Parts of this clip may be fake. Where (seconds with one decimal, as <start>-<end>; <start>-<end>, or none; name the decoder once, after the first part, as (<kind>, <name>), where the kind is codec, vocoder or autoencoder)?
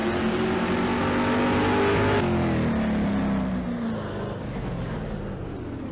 none